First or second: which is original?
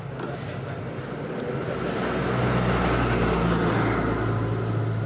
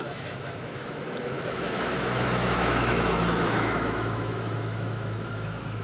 first